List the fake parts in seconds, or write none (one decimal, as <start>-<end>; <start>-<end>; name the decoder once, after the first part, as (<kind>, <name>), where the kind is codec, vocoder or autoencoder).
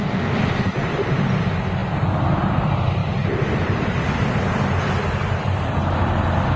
3.0-4.0 (vocoder, BigVGAN v2)